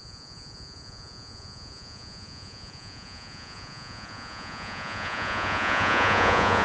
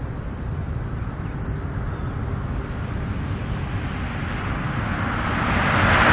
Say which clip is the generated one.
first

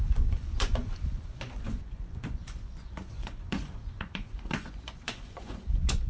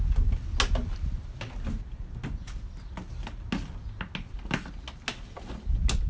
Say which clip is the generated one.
first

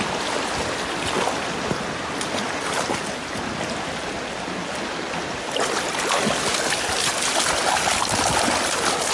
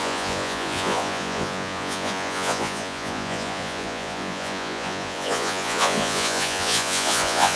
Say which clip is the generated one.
second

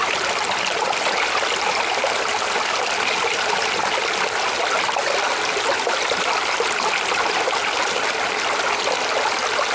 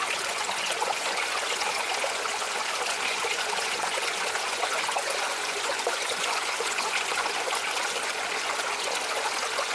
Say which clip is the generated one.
second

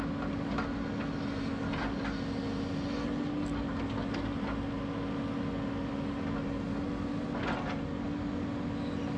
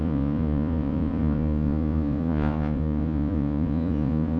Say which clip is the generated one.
second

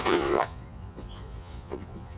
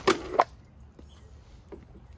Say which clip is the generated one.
first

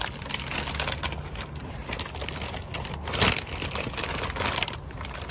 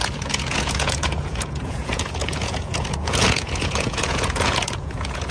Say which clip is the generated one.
second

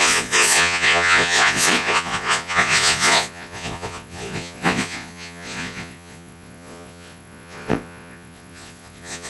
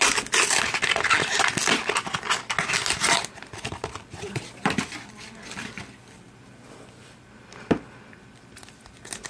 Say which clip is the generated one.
first